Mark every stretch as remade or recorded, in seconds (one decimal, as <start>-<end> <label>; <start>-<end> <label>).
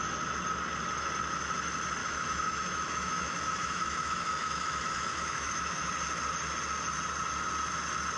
0.0-2.0 recorded; 2.0-5.9 remade; 5.9-8.2 recorded